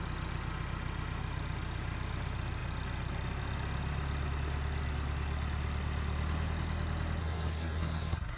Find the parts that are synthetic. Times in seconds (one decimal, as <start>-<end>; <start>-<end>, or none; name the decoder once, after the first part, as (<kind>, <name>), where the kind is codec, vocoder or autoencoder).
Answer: 7.2-8.4 (codec, SNAC)